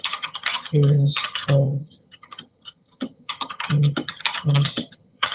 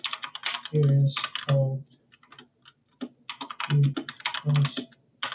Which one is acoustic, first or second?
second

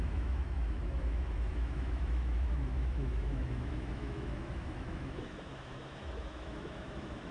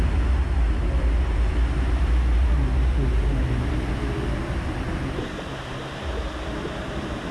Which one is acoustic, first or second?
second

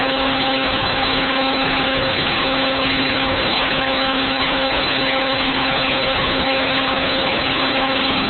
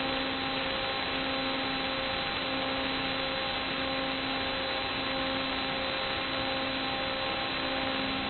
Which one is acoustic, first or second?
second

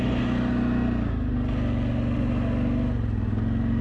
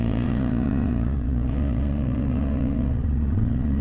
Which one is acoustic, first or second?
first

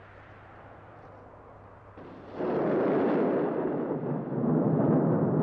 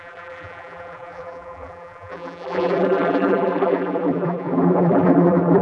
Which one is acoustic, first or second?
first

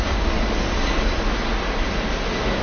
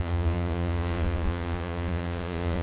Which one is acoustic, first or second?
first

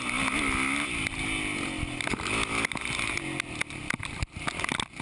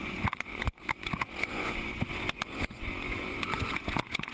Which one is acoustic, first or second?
first